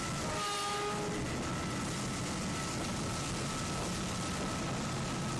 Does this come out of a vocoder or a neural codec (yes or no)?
no